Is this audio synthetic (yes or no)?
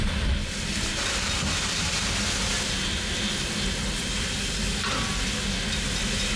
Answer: no